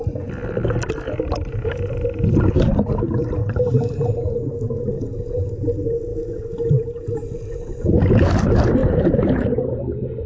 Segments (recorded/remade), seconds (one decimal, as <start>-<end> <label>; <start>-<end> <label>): 0.0-3.4 recorded; 3.4-4.5 remade; 4.5-8.8 recorded; 8.8-9.5 remade; 9.5-10.3 recorded